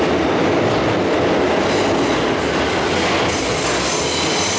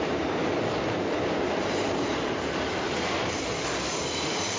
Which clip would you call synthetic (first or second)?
second